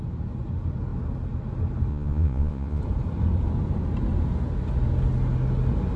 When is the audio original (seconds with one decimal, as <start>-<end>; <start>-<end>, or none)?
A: 0.0-1.9; 2.8-6.0

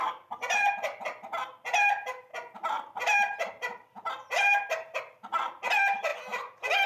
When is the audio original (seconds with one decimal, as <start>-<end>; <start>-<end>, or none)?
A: 0.0-6.9

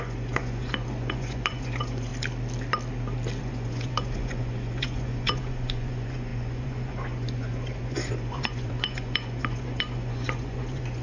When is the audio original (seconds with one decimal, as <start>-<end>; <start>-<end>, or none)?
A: 2.1-3.4

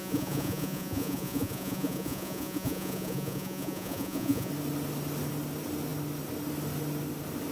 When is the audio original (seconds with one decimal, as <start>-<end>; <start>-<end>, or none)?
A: 4.5-7.5